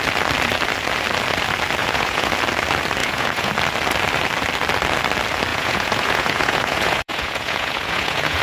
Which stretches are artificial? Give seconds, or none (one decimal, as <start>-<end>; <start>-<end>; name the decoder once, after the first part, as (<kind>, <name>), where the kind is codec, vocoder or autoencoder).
1.8-2.3 (vocoder, Vocos); 3.0-3.5; 5.5-8.4